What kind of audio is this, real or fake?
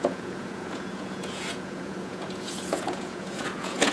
fake